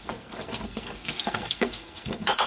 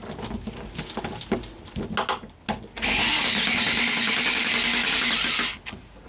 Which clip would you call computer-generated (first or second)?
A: first